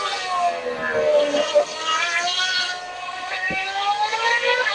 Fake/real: real